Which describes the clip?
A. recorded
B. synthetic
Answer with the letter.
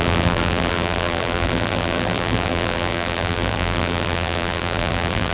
B